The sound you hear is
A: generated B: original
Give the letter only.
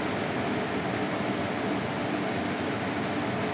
B